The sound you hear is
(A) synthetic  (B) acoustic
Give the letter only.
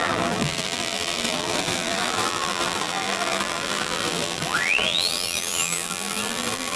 A